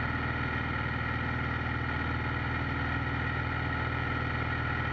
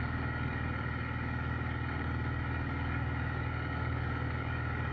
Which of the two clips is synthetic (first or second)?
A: second